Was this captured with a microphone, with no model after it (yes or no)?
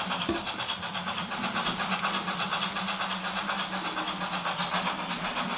yes